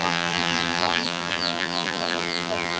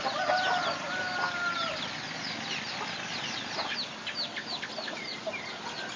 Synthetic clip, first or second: first